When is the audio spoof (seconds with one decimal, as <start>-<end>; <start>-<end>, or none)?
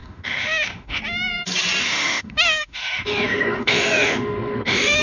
0.0-1.0; 1.8-5.0